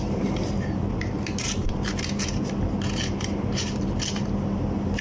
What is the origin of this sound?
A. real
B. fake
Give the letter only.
B